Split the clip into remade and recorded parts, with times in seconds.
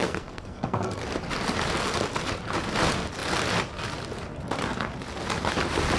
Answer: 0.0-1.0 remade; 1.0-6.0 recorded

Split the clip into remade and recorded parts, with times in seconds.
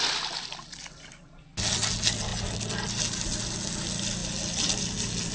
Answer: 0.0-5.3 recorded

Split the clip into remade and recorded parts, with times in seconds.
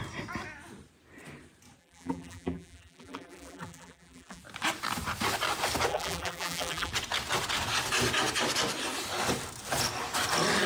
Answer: 0.0-1.8 recorded; 1.8-4.4 remade; 4.4-5.9 recorded; 5.9-6.9 remade; 6.9-10.7 recorded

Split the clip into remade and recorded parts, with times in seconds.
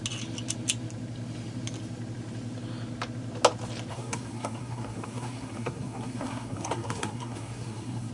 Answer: 0.0-3.9 recorded; 3.9-8.1 remade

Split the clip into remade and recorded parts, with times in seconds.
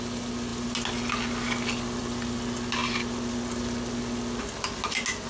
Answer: 0.0-5.3 recorded